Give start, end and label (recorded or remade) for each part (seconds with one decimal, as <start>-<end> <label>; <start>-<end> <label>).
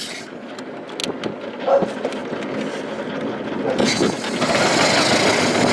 0.0-5.7 recorded